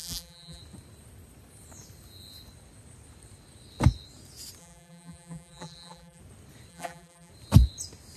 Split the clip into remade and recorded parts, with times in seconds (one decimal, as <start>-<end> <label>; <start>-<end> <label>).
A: 0.0-0.6 remade; 0.6-4.6 recorded; 4.6-6.2 remade; 6.2-6.7 recorded; 6.7-7.3 remade; 7.3-8.2 recorded